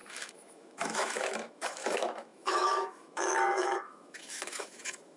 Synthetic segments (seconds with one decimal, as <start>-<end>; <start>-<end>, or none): 0.0-5.2